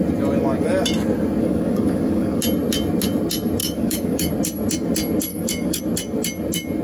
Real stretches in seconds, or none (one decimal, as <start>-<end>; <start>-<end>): 0.0-1.4; 2.4-3.6; 4.3-5.3; 5.8-6.8